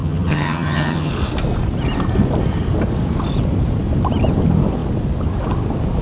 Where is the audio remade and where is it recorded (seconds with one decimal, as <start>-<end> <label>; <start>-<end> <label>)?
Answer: 0.0-1.1 remade; 1.1-6.0 recorded